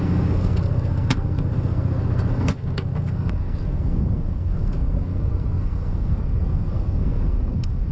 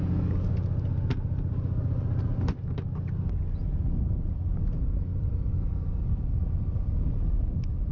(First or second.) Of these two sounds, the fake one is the first